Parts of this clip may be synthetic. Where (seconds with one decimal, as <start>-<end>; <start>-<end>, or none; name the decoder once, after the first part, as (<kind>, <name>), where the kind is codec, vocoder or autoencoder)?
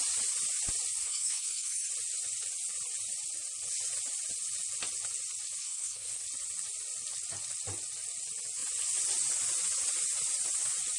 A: 1.0-1.9 (codec, SNAC); 5.6-6.2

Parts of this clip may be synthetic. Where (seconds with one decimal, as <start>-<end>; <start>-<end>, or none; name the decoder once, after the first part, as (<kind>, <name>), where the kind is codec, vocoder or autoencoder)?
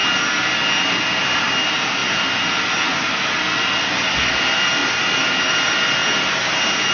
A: 1.2-2.0 (vocoder, BigVGAN v2); 3.8-6.0